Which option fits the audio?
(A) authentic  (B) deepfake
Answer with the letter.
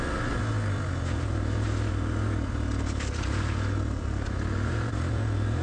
A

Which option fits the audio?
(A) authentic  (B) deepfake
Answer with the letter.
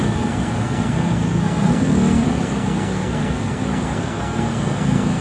B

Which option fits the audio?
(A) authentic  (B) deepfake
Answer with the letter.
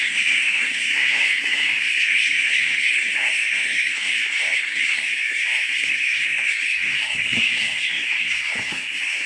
B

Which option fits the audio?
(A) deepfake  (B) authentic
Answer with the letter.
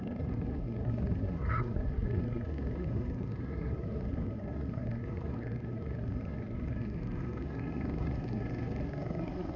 A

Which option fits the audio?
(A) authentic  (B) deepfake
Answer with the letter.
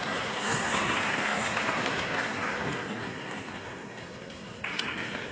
B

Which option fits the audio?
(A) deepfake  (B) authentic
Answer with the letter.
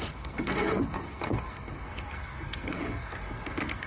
A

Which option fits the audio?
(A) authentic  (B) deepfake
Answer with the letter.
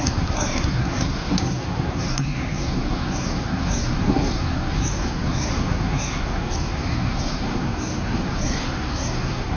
B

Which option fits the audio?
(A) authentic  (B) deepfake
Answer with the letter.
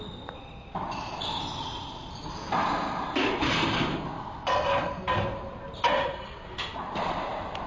A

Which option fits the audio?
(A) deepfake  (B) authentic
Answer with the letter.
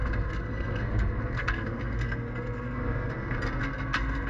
A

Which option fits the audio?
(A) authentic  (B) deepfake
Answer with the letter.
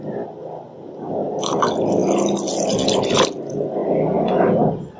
A